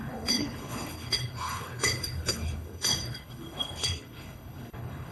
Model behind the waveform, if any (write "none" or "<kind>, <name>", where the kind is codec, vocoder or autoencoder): codec, HILCodec